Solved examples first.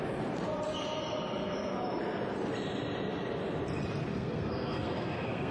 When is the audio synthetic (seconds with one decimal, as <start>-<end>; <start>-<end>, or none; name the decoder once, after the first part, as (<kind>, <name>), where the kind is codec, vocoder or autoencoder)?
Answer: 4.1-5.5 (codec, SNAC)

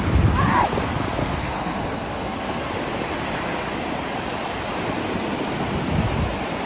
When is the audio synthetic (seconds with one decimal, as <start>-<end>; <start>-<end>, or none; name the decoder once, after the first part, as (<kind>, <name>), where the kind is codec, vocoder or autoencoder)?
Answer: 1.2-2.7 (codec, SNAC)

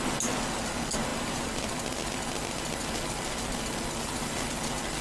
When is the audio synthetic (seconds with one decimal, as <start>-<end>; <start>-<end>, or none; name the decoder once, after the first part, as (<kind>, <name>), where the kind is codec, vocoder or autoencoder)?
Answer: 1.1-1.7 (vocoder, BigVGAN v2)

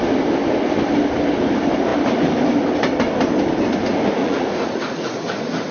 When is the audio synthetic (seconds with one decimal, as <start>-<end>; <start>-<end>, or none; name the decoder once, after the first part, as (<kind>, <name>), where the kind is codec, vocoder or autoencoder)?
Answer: 4.2-5.7 (vocoder, Vocos)